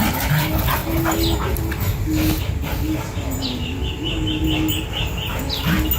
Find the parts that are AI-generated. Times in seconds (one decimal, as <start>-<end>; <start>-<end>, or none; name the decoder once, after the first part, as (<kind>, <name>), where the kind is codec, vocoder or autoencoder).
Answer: none